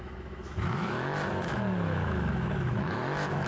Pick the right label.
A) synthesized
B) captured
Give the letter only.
A